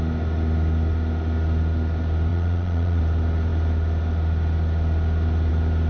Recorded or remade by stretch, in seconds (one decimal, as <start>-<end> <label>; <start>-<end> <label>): 0.0-2.3 recorded; 2.3-3.0 remade; 3.0-5.9 recorded